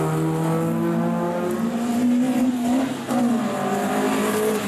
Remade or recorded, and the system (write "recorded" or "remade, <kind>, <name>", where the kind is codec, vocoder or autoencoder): recorded